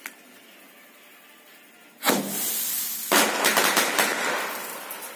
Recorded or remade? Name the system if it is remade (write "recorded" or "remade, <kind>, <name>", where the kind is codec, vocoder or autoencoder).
recorded